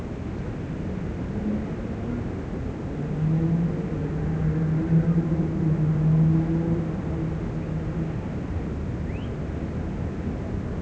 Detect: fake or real real